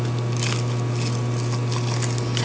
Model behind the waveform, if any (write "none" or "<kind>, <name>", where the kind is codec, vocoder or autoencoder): none